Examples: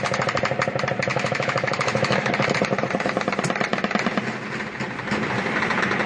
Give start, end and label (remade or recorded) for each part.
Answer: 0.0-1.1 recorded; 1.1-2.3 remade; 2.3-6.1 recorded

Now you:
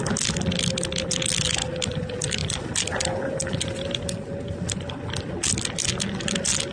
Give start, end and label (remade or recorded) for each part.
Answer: 0.0-6.7 recorded

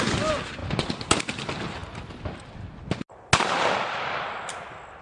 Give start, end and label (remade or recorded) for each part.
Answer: 0.0-5.0 recorded

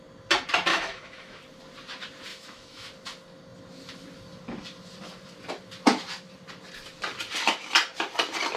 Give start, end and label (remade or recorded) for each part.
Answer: 0.0-0.7 recorded; 0.7-1.4 remade; 1.4-2.3 recorded; 2.3-2.9 remade; 2.9-8.6 recorded

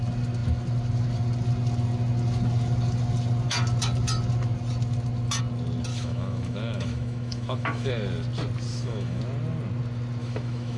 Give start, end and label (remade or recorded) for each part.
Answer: 0.0-5.9 recorded; 5.9-7.9 remade; 7.9-8.7 recorded; 8.7-9.2 remade; 9.2-10.2 recorded; 10.2-10.8 remade